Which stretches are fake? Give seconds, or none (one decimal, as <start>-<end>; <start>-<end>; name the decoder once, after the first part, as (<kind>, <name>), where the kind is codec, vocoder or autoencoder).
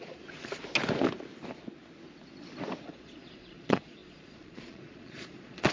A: 0.0-0.6 (vocoder, Vocos); 2.8-5.7